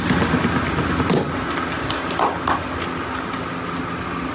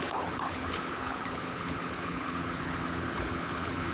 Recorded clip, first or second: first